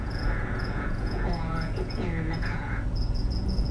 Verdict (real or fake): fake